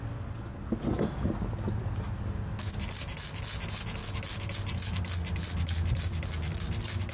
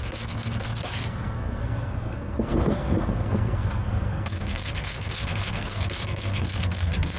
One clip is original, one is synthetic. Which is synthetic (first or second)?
second